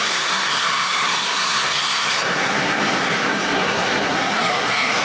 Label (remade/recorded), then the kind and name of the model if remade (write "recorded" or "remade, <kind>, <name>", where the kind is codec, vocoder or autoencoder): remade, codec, SNAC